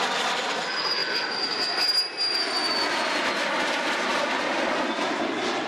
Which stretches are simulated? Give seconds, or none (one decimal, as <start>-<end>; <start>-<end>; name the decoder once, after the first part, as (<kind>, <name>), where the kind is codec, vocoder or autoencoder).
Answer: 4.1-5.0 (vocoder, BigVGAN v2)